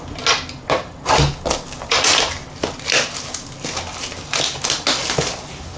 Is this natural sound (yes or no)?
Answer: yes